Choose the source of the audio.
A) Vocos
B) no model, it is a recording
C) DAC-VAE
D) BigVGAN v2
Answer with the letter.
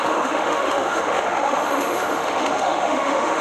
C